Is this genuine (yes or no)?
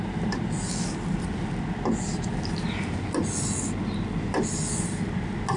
yes